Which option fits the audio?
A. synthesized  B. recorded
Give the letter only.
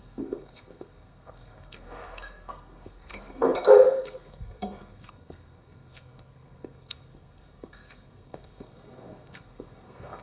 A